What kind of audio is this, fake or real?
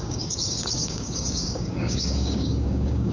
fake